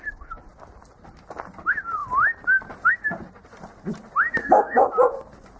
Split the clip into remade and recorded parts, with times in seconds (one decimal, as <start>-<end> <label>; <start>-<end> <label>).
0.0-4.4 recorded; 4.4-4.9 remade; 4.9-5.6 recorded